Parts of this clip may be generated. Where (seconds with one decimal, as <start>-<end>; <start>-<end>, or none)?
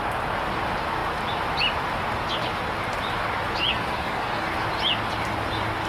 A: 3.7-4.4